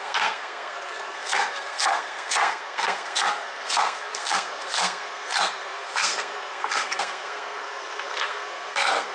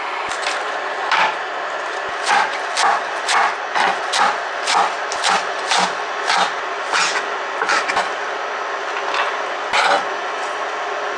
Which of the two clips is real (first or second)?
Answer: second